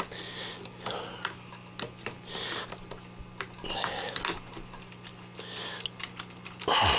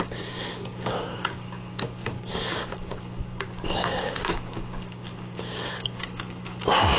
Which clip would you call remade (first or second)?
second